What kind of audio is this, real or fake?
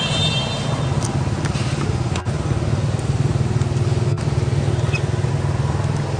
real